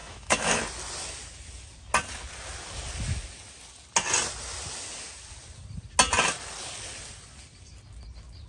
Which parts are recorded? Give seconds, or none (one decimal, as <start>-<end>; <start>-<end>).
0.6-8.5